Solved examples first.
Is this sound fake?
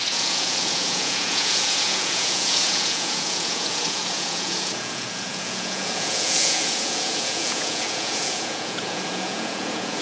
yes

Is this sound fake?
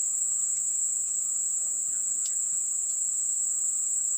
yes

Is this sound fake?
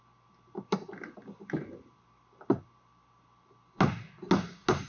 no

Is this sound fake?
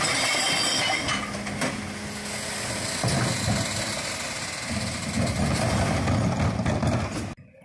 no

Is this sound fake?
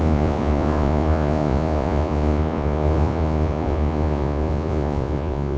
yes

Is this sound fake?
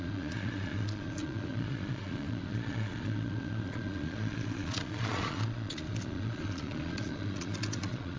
yes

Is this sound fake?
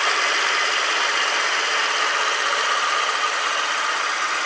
no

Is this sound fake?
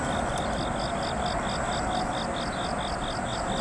no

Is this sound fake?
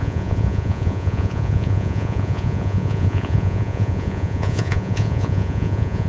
yes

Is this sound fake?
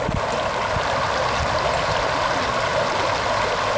no